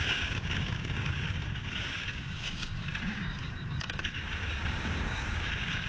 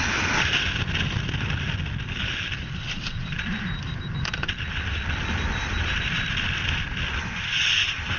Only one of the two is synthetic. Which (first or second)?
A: first